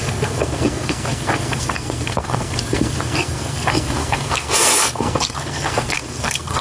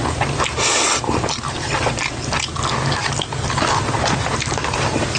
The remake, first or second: first